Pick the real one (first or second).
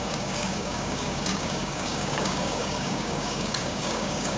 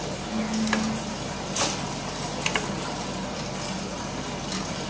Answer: second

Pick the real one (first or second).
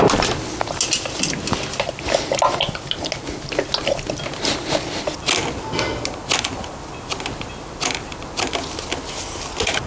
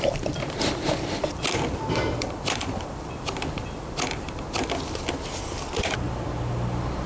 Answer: first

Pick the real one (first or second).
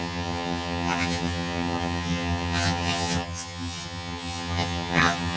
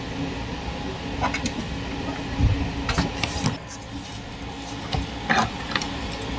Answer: second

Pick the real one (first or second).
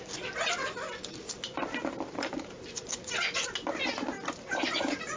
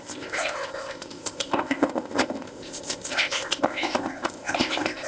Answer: first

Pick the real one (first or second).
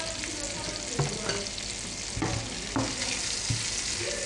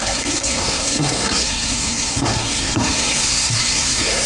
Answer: first